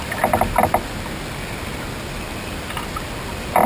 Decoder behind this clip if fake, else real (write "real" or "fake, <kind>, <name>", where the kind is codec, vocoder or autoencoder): real